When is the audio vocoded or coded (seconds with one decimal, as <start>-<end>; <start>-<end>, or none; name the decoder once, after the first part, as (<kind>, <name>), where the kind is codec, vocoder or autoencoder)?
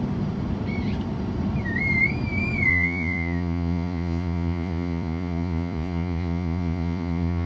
2.7-7.5 (vocoder, Vocos)